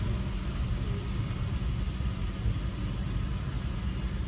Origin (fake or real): real